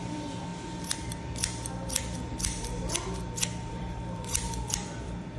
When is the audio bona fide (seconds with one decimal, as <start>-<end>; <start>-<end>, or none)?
0.5-3.7